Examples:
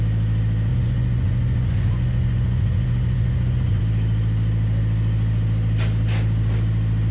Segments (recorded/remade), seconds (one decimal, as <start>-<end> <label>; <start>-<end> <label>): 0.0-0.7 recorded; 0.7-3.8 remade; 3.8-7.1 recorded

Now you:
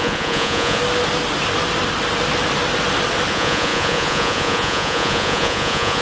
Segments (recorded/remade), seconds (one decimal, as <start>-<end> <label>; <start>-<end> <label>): 0.0-0.8 remade; 0.8-3.3 recorded; 3.3-6.0 remade

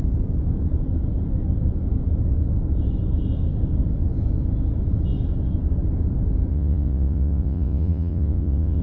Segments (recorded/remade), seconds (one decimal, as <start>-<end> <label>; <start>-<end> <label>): 0.0-6.5 recorded; 6.5-8.8 remade